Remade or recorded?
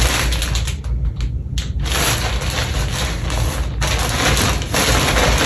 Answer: recorded